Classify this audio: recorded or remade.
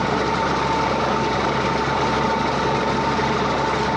recorded